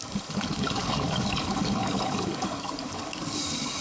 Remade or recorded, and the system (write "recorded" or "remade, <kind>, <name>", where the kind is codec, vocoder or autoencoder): remade, codec, DAC